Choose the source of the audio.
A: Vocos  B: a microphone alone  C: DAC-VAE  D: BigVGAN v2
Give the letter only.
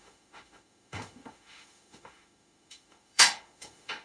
C